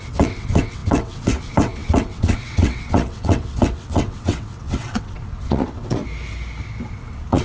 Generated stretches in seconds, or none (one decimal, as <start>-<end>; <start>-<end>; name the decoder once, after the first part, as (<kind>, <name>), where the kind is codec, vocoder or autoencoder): 0.0-6.0 (vocoder, WaveNeXt); 6.9-7.4